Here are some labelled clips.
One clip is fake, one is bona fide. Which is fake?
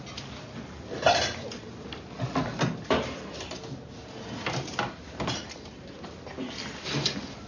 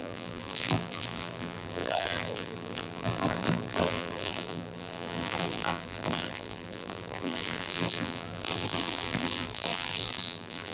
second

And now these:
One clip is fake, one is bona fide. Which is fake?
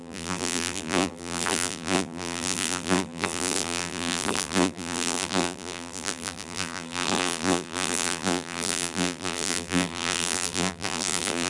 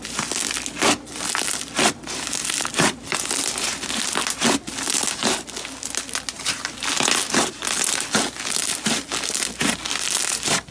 first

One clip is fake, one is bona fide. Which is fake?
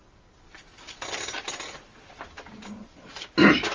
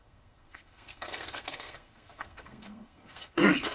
second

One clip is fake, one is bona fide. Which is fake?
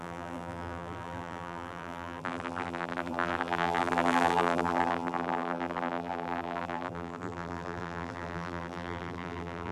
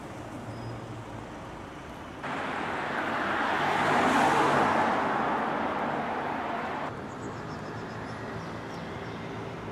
first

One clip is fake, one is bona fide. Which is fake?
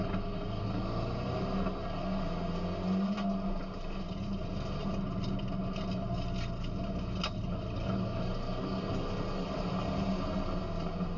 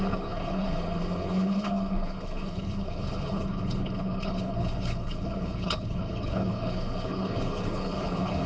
second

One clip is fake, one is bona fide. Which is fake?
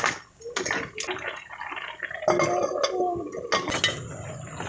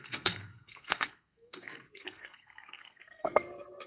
second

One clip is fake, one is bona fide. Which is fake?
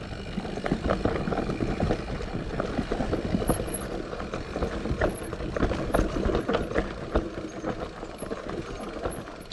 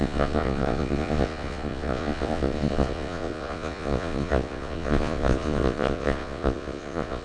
second